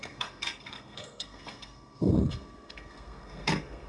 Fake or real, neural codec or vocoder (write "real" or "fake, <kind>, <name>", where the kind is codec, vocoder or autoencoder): fake, codec, SNAC